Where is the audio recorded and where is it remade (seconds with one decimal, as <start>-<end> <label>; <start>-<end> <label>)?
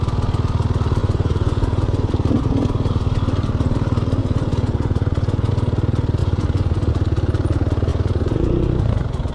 0.0-1.0 recorded; 1.0-2.1 remade; 2.1-4.2 recorded; 4.2-5.5 remade; 5.5-6.2 recorded; 6.2-6.9 remade; 6.9-7.9 recorded; 7.9-9.3 remade